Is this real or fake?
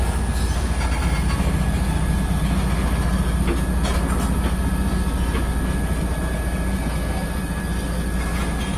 real